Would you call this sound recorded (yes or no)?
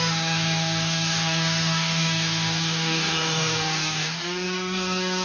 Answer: no